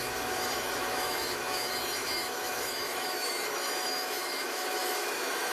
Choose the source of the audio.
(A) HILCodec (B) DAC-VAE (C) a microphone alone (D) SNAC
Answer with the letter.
B